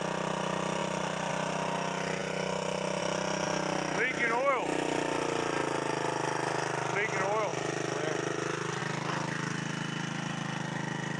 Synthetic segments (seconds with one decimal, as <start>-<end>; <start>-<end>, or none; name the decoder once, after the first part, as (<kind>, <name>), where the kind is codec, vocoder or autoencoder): none

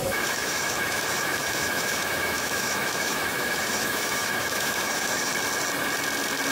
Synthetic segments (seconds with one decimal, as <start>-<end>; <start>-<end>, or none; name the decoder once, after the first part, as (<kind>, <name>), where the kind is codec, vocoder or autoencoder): 0.0-5.3 (autoencoder, DAC-VAE)

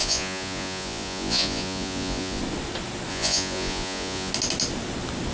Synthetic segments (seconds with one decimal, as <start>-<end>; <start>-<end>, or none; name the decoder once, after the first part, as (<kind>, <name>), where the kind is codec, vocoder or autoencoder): 0.0-2.4 (vocoder, Vocos); 3.1-4.3

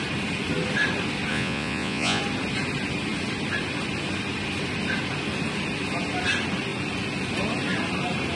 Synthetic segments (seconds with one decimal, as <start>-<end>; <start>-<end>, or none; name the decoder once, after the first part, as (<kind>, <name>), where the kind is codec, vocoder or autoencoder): 1.3-2.2 (vocoder, Vocos)

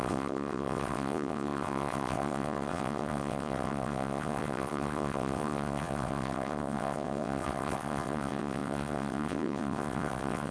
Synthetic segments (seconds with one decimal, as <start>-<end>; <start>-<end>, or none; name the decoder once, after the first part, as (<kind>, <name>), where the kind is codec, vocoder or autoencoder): 0.0-10.5 (vocoder, WaveNeXt)